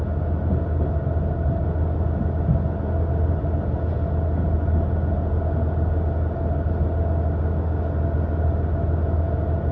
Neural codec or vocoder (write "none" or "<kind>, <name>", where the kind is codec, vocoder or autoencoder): none